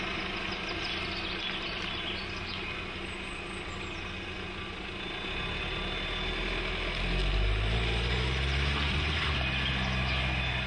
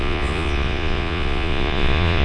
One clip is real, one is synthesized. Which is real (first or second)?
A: first